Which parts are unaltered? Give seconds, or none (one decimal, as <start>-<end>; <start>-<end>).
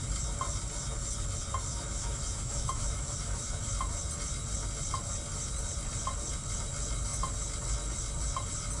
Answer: 0.0-1.7; 3.6-8.8